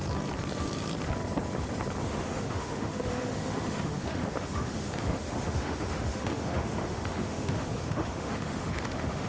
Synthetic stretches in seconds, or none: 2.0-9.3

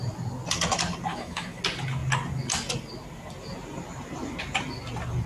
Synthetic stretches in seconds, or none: 1.1-1.6

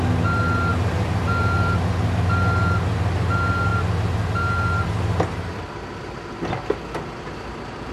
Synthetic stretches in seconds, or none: none

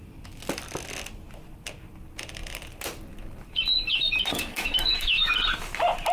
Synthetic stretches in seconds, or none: 4.3-5.3